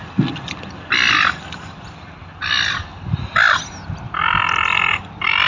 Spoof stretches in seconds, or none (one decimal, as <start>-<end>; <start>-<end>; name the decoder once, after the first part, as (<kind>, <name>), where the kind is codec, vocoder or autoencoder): none